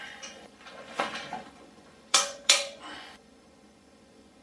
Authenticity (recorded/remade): remade